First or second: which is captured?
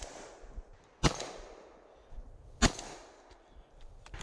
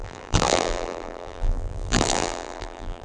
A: first